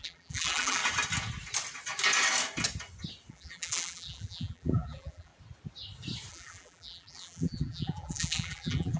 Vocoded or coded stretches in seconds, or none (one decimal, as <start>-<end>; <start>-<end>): 0.0-0.8; 3.3-5.3; 6.3-9.0